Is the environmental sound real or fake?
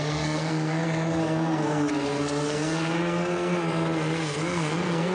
fake